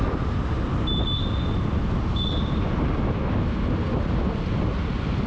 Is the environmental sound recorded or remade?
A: recorded